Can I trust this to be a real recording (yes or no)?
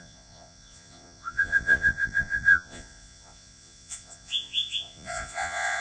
no